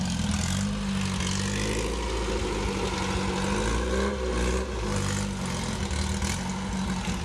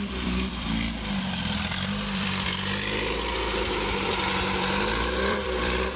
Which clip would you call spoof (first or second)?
second